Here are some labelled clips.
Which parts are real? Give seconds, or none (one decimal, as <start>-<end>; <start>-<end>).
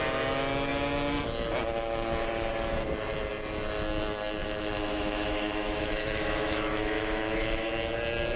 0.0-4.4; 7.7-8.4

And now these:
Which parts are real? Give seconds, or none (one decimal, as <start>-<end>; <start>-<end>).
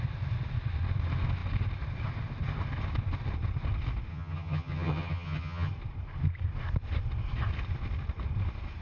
0.0-4.1; 5.7-8.8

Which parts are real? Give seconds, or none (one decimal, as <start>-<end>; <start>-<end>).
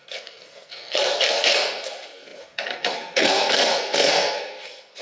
none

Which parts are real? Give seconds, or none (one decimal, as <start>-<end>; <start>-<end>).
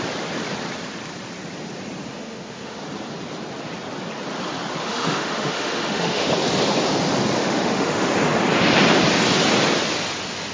0.0-2.1; 2.8-4.8; 6.3-7.4; 8.1-10.5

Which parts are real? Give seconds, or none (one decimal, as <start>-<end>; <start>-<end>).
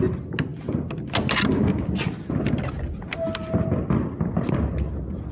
0.0-5.3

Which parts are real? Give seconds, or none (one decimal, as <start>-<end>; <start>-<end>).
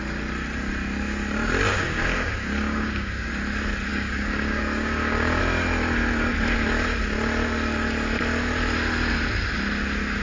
0.0-1.7; 3.3-3.9; 5.4-10.2